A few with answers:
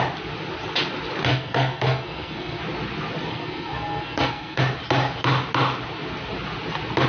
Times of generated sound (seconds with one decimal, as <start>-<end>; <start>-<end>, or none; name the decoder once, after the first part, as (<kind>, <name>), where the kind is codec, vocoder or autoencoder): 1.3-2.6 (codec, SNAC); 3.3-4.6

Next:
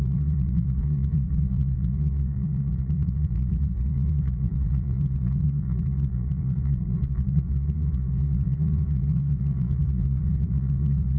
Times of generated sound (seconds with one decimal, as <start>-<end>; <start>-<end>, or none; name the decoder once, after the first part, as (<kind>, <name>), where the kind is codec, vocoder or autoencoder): 0.0-11.2 (vocoder, Vocos)

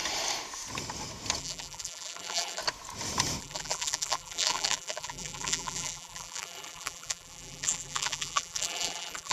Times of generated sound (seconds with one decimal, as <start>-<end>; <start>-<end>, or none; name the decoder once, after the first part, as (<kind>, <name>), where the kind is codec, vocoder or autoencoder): 1.4-2.6 (vocoder, BigVGAN v2); 3.4-9.3

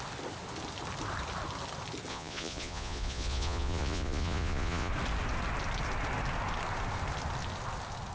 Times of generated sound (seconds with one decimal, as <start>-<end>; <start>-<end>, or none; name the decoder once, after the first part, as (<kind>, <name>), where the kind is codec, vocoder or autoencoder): 2.1-4.9 (vocoder, Vocos)

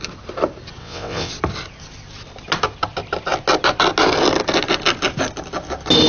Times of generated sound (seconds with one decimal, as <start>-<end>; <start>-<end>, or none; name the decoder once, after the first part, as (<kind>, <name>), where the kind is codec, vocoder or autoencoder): 0.8-1.3 (vocoder, WaveNeXt)

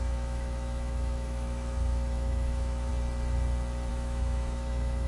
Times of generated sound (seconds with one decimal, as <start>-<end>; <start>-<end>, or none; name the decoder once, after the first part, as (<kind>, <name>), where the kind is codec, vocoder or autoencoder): 0.0-2.9 (autoencoder, DAC-VAE); 3.9-5.1